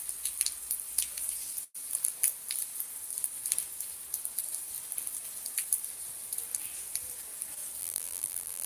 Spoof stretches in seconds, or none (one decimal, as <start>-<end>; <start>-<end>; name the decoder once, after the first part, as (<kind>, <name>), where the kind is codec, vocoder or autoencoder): 7.8-8.7 (vocoder, BigVGAN v2)